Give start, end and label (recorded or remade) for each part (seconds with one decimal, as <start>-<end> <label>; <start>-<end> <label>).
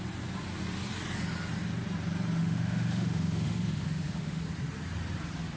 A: 0.0-2.4 recorded; 2.4-4.4 remade; 4.4-5.6 recorded